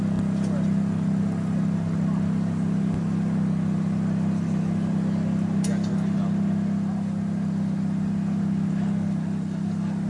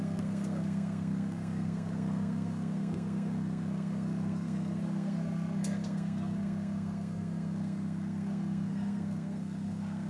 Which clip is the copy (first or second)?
second